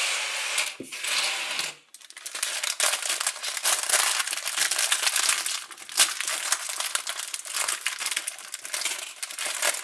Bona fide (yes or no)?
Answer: yes